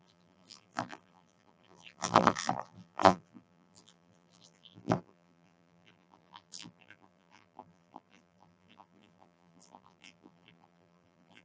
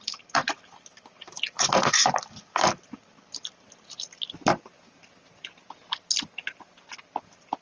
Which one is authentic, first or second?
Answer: second